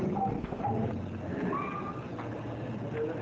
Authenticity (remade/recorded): recorded